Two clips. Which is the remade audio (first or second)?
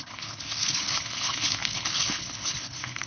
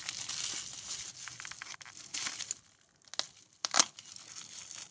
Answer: first